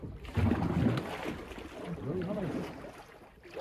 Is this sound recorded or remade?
recorded